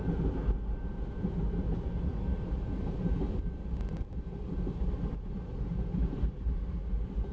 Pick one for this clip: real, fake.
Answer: fake